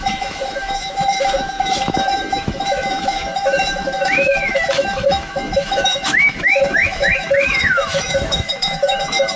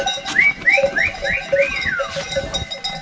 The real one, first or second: second